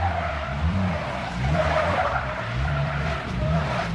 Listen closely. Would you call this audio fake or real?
fake